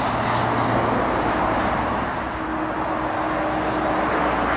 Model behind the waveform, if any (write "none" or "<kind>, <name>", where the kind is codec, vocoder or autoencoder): none